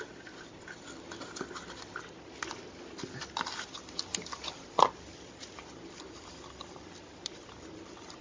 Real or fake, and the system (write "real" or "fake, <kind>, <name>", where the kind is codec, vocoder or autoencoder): real